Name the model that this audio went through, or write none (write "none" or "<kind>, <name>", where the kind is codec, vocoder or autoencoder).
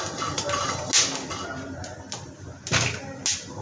none